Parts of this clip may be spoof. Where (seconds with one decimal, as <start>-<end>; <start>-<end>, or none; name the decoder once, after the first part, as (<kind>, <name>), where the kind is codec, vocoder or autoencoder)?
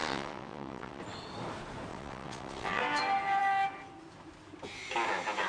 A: 0.0-1.0 (vocoder, WaveNeXt); 1.9-2.8